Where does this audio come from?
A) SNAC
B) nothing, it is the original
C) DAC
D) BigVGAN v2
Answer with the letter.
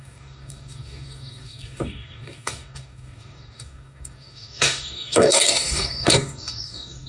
C